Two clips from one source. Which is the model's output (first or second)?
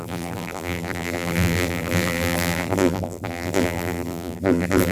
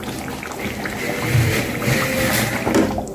first